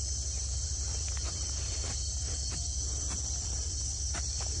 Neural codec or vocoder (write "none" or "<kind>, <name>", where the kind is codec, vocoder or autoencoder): vocoder, BigVGAN v2